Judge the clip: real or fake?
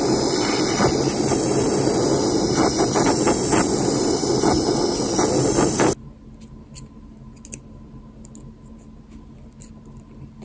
real